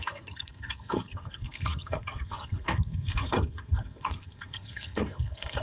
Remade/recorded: remade